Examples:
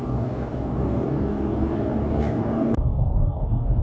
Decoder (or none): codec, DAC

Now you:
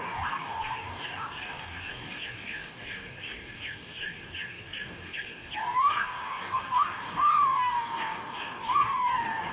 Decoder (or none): codec, DAC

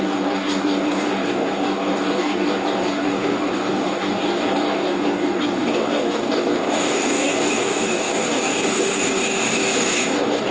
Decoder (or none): codec, DAC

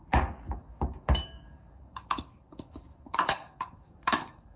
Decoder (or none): codec, DAC